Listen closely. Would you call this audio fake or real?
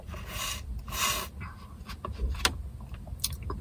real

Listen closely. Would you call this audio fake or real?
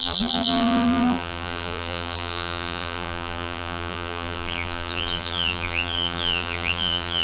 fake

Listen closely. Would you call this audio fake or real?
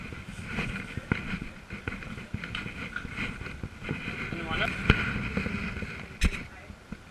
real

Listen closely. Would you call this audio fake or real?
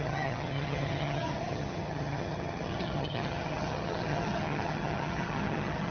fake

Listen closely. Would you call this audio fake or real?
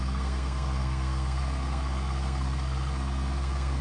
fake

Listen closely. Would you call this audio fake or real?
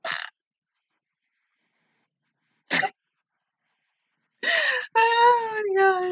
real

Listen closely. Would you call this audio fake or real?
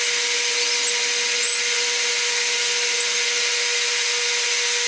real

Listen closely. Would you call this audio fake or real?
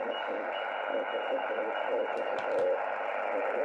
real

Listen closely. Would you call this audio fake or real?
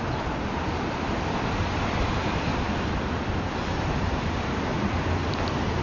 fake